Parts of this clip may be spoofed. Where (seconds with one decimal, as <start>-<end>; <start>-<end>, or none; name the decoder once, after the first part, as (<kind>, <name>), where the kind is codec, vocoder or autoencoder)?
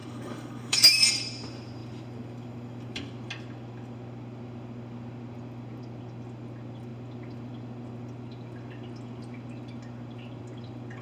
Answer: 0.0-1.1 (codec, DAC)